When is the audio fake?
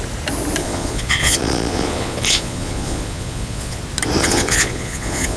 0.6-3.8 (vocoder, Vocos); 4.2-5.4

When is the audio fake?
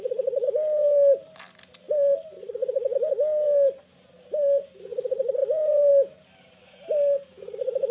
none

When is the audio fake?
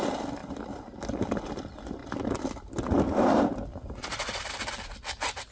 none